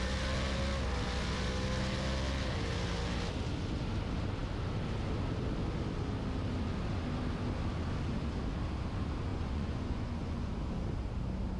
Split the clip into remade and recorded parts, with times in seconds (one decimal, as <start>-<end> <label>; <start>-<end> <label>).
0.0-9.3 recorded; 9.3-10.5 remade; 10.5-11.6 recorded